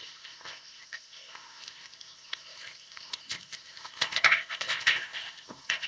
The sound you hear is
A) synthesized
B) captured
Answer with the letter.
A